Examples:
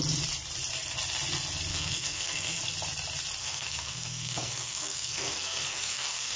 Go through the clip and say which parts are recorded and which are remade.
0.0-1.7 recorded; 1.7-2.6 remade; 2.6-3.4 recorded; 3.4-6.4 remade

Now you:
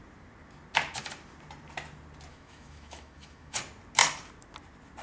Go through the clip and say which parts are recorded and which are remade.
0.0-2.3 recorded; 2.3-3.6 remade; 3.6-5.0 recorded

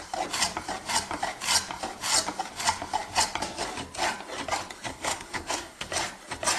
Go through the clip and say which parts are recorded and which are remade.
0.0-4.9 recorded; 4.9-5.9 remade; 5.9-6.6 recorded

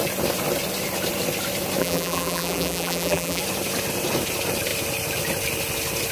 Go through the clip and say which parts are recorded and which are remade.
0.0-1.8 recorded; 1.8-3.4 remade; 3.4-6.1 recorded

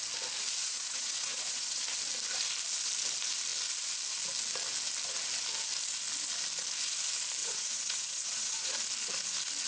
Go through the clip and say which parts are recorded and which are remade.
0.0-0.6 recorded; 0.6-1.8 remade; 1.8-7.4 recorded; 7.4-8.7 remade; 8.7-9.7 recorded